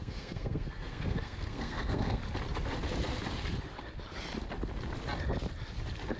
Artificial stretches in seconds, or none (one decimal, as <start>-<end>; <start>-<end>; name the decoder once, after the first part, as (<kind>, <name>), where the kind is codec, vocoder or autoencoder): 0.0-2.2 (codec, SNAC)